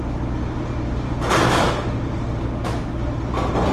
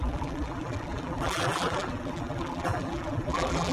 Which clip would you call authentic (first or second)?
first